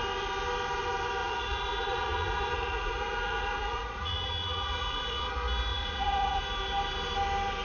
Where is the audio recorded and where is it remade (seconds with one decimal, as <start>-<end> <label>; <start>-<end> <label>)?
0.0-1.2 recorded; 1.2-5.3 remade; 5.3-5.7 recorded; 5.7-6.4 remade; 6.4-7.6 recorded